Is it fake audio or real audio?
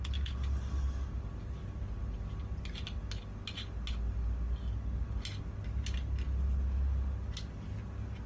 real